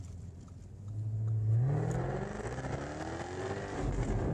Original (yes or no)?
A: yes